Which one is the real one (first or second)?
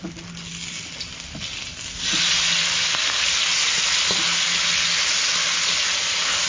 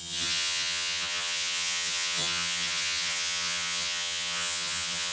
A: first